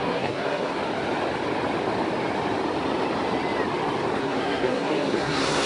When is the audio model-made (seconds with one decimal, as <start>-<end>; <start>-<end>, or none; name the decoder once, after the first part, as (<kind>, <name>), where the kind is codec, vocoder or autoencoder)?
0.0-0.8 (codec, SNAC); 4.2-5.7

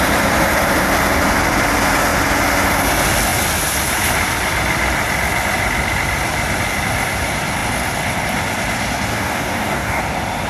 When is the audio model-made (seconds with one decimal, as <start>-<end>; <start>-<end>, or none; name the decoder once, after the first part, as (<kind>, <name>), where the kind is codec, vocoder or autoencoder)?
9.1-10.0 (codec, DAC)

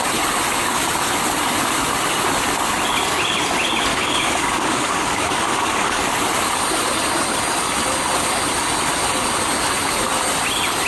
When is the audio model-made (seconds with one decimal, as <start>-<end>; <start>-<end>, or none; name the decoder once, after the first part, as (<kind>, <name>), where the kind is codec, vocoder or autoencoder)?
3.9-6.0 (codec, DAC)

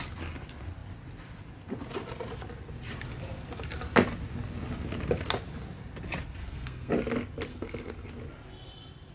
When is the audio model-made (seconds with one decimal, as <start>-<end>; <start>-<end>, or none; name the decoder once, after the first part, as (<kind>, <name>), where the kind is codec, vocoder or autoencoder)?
6.4-6.9 (codec, SNAC); 7.5-8.1

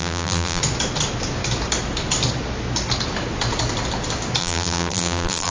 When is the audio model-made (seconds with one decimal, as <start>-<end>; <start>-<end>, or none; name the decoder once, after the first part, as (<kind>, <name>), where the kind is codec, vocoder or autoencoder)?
0.0-0.6 (vocoder, BigVGAN v2); 4.4-5.5

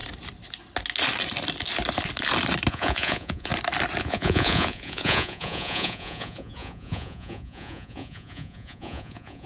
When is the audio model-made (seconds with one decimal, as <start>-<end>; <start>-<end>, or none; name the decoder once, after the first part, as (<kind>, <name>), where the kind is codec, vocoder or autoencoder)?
2.7-3.5 (vocoder, Vocos); 4.0-9.5

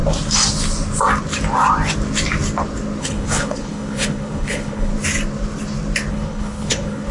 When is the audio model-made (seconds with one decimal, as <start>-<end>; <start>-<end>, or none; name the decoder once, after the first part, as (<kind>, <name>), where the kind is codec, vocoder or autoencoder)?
3.0-4.9 (codec, HILCodec); 6.1-7.1

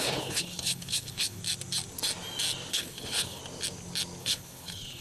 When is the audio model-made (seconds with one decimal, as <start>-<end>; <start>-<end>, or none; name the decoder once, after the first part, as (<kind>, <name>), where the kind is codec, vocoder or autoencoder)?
0.0-1.4 (codec, HILCodec); 2.7-3.4; 4.2-5.0